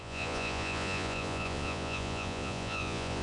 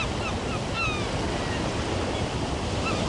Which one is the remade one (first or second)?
first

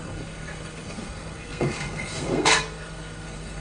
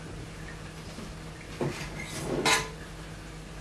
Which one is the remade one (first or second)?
first